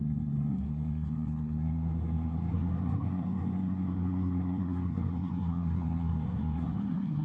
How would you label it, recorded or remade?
remade